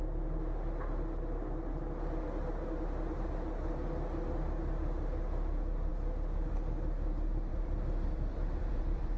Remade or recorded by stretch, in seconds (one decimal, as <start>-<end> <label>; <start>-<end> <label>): 0.0-7.5 recorded; 7.5-9.2 remade